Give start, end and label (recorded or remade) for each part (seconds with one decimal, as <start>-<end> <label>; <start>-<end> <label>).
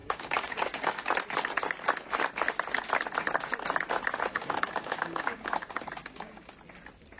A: 0.0-1.1 remade; 1.1-4.3 recorded; 4.3-6.5 remade; 6.5-7.2 recorded